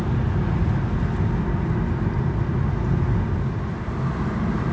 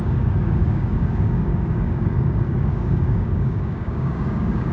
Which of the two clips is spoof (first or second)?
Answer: second